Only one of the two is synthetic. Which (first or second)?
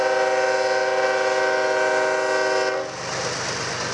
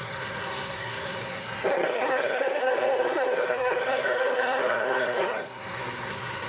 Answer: second